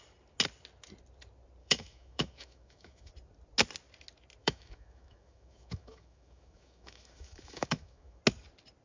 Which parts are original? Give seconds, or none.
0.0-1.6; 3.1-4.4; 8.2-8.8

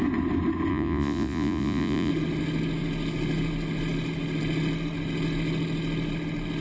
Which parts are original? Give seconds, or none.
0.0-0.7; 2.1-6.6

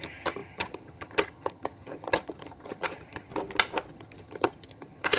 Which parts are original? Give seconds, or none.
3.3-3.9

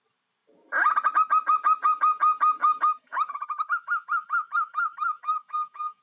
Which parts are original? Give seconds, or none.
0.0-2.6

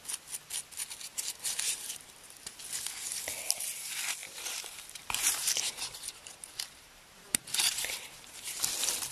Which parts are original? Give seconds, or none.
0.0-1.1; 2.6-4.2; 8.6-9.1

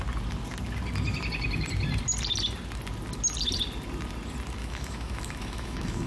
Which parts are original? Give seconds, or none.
0.0-4.6

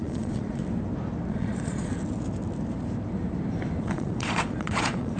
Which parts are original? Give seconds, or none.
0.6-1.3; 1.9-3.8

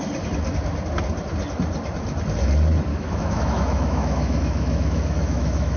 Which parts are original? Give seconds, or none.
0.0-2.9